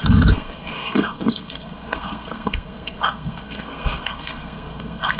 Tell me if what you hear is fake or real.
fake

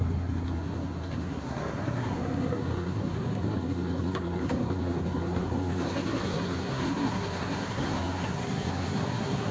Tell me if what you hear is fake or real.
fake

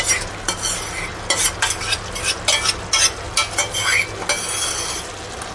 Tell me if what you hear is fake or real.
real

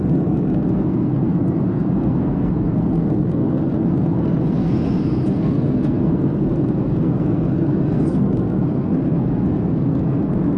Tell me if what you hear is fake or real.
fake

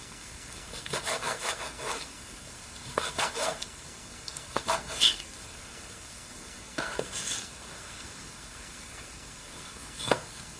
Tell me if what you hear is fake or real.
fake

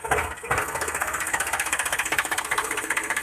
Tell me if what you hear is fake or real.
fake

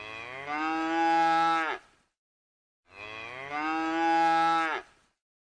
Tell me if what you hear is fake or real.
real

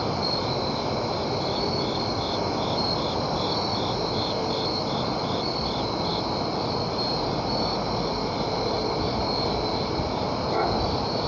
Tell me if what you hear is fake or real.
real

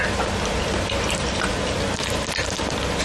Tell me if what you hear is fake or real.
real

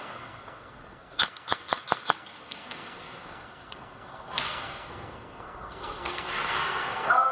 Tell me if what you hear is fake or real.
fake